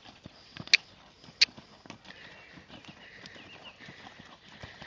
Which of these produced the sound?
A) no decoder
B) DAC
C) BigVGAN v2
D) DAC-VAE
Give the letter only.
A